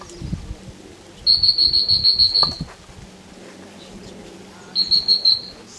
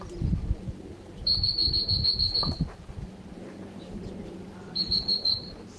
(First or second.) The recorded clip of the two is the first